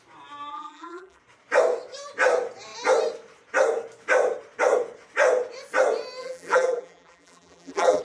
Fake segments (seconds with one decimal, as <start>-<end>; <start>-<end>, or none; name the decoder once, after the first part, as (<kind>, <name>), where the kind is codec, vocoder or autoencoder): 0.5-1.2 (vocoder, BigVGAN v2); 6.2-8.0